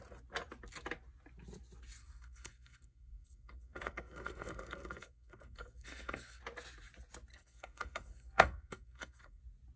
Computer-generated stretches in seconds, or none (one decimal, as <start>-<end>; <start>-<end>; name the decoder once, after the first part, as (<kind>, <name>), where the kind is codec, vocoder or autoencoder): 2.0-6.4 (codec, SNAC); 7.3-9.4